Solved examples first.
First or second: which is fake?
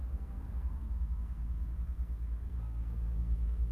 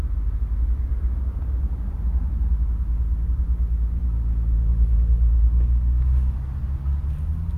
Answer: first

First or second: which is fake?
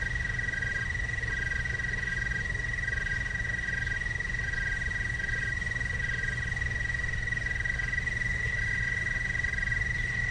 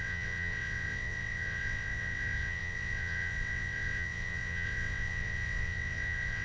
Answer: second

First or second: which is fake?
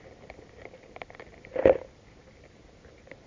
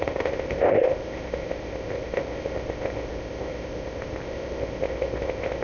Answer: second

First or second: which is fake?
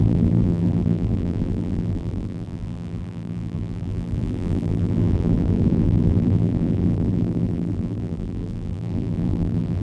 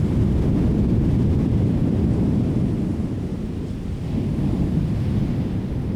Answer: first